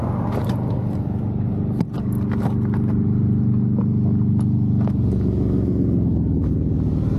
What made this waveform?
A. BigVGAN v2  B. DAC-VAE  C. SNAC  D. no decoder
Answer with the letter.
D